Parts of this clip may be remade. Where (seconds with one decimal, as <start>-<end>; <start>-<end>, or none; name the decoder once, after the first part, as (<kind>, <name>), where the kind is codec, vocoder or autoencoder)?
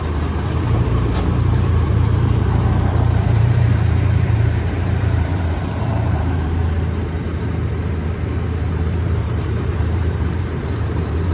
0.0-6.6 (vocoder, BigVGAN v2); 8.9-11.3